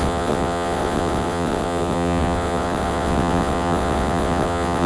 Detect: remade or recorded remade